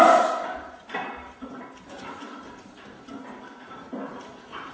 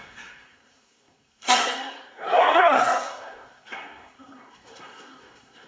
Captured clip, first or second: first